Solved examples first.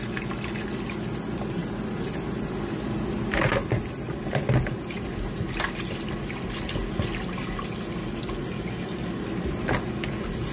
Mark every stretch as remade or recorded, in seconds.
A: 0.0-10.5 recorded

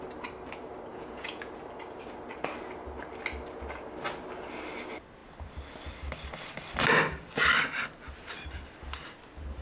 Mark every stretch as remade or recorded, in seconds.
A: 0.0-0.9 recorded; 0.9-1.5 remade; 1.5-9.6 recorded

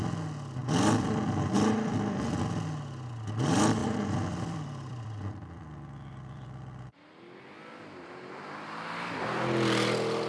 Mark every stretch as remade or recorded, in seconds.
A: 0.0-0.6 recorded; 0.6-2.3 remade; 2.3-3.8 recorded; 3.8-7.0 remade; 7.0-10.3 recorded

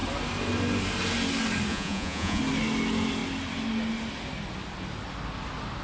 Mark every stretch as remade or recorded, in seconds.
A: 0.0-1.7 recorded; 1.7-2.4 remade; 2.4-5.8 recorded

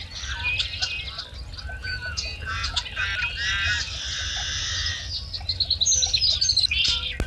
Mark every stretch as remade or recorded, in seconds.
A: 0.0-1.8 recorded; 1.8-2.8 remade; 2.8-7.3 recorded